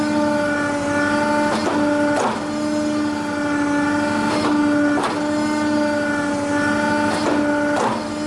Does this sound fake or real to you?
real